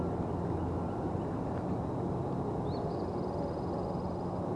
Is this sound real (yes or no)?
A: yes